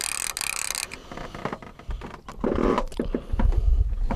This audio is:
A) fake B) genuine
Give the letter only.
B